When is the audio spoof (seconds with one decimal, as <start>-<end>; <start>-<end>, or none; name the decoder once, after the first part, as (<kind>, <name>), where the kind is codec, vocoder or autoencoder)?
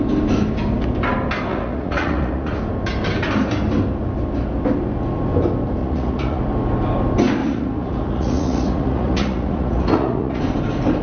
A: 1.5-2.6 (vocoder, Vocos); 5.8-6.4; 7.4-10.4